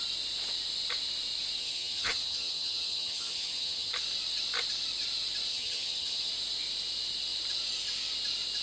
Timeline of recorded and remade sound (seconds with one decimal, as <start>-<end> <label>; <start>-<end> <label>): 0.0-1.6 recorded; 1.6-3.9 remade; 3.9-5.5 recorded; 5.5-6.3 remade; 6.3-8.6 recorded